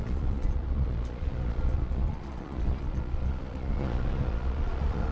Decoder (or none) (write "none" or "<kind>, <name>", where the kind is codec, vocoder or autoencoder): vocoder, Vocos